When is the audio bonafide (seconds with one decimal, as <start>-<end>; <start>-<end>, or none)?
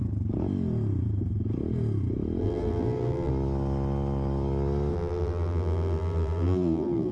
0.0-2.4; 3.3-4.9